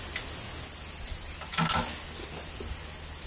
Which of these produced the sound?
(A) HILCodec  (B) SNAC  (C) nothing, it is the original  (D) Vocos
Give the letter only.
C